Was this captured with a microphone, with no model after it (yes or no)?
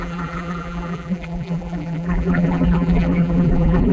no